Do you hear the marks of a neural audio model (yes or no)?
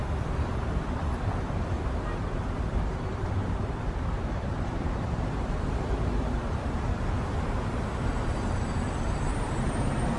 yes